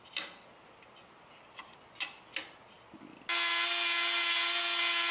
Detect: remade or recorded recorded